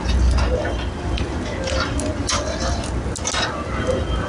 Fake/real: real